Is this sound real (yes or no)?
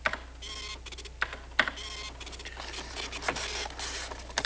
yes